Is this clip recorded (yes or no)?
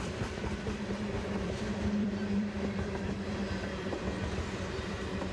no